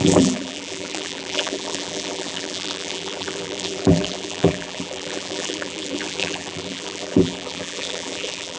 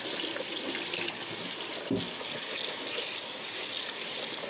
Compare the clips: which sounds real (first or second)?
second